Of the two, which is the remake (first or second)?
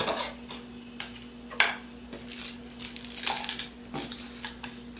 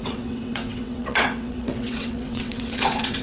second